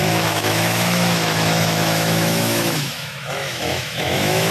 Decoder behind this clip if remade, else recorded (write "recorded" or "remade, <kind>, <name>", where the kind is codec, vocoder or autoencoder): remade, autoencoder, DAC-VAE